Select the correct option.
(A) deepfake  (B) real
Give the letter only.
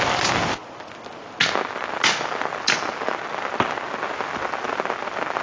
B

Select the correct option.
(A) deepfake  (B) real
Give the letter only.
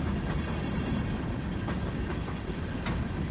B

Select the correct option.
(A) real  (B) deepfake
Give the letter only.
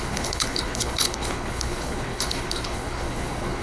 B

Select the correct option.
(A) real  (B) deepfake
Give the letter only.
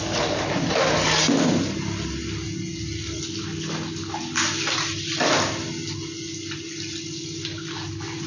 A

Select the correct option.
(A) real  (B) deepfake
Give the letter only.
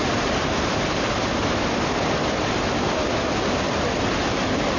A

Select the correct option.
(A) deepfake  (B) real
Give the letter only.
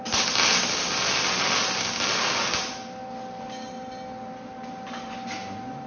B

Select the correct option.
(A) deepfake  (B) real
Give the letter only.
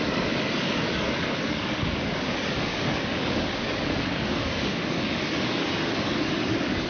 A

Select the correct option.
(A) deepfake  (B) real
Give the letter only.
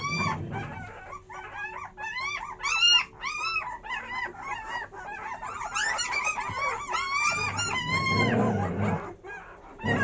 B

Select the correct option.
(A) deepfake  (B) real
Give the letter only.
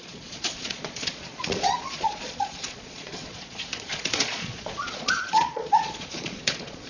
A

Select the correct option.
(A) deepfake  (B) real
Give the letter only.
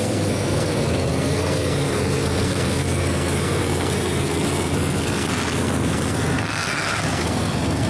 A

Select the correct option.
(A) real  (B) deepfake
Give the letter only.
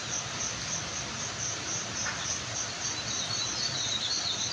A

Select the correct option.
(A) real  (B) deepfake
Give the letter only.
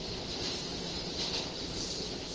A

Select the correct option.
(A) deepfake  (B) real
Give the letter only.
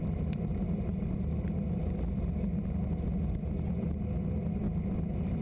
B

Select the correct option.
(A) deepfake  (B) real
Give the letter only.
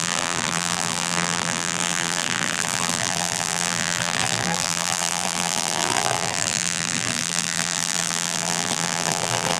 A